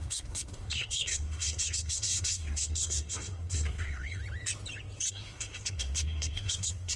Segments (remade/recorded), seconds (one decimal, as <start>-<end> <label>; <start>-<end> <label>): 0.0-4.2 remade; 4.2-5.1 recorded; 5.1-7.0 remade